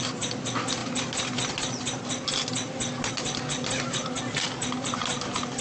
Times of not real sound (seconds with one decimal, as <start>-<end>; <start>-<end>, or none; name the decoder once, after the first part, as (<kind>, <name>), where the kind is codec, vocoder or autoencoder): none